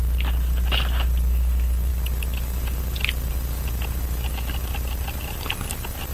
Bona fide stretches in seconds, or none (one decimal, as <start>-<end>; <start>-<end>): 0.0-6.1